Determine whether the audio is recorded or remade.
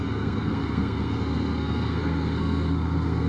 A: remade